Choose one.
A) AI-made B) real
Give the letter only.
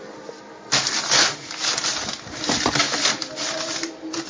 B